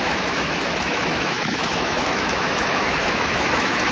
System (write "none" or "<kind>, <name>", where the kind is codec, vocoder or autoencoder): autoencoder, DAC-VAE